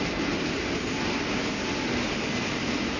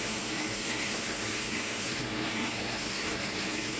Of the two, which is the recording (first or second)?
first